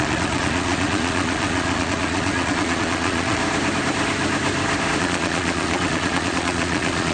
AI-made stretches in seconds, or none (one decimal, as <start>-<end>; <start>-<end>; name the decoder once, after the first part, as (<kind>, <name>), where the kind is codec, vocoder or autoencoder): 0.0-3.4 (vocoder, Vocos); 5.0-7.1